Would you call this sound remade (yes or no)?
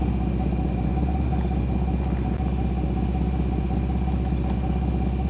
no